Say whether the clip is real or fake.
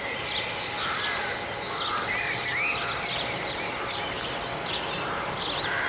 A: real